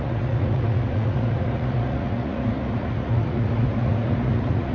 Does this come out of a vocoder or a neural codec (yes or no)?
yes